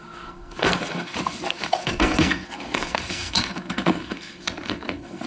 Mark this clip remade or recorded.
remade